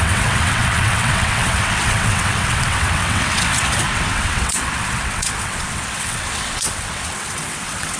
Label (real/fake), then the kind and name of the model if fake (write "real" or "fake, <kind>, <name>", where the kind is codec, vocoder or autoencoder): fake, vocoder, WaveNeXt